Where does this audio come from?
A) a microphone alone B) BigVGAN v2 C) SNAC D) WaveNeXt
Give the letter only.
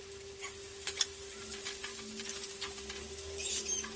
A